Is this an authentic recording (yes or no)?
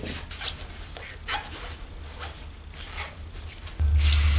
yes